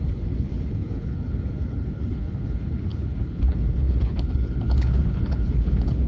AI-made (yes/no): yes